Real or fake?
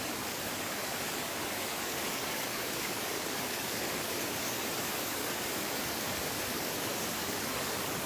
fake